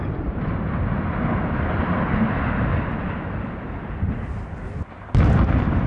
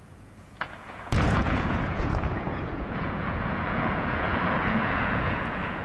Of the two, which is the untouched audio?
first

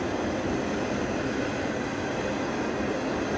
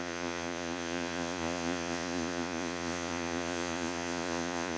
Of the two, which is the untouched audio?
first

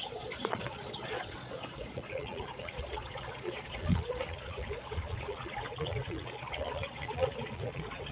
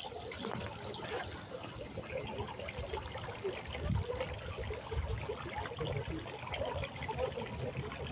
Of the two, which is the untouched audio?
second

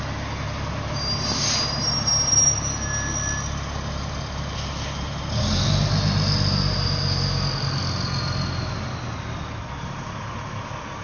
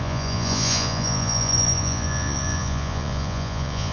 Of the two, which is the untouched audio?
first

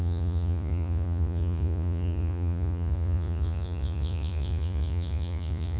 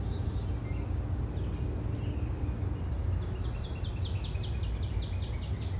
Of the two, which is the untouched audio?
second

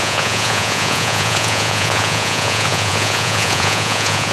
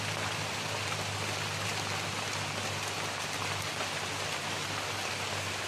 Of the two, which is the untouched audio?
second